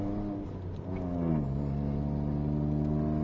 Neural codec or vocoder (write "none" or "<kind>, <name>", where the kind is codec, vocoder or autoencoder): none